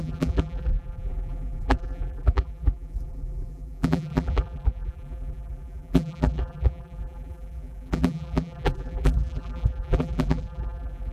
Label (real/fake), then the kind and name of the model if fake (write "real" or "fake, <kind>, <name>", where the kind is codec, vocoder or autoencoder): fake, vocoder, BigVGAN v2